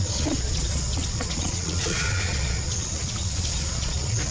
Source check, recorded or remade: remade